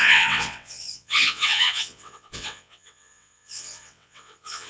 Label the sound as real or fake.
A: fake